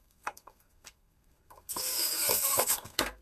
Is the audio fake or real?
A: fake